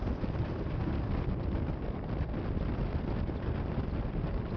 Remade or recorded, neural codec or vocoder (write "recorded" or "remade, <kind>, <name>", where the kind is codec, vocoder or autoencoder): recorded